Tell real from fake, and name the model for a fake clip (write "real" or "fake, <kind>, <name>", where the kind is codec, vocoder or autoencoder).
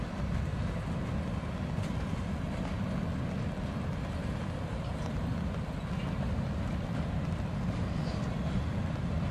real